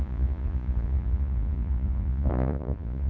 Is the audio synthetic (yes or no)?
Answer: yes